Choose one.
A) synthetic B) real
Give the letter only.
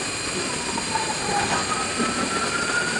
B